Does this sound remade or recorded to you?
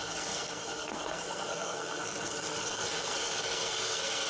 remade